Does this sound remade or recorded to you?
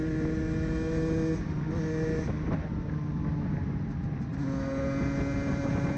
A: recorded